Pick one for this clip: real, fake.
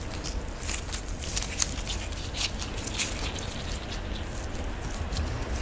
real